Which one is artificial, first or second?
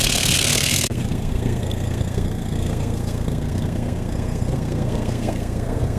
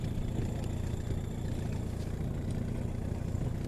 first